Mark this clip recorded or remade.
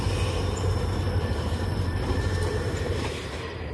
remade